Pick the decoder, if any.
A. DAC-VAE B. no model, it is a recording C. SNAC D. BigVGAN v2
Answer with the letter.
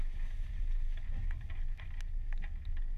B